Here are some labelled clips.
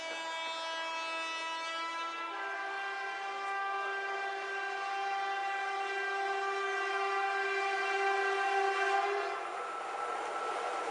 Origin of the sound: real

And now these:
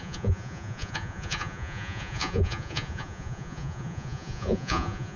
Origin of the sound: fake